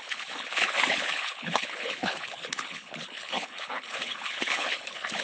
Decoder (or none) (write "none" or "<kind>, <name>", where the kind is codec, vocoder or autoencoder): codec, HILCodec